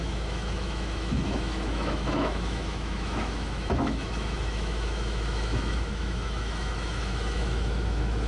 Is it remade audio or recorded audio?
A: remade